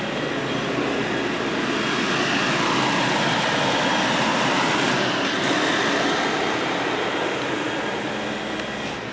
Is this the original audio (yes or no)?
yes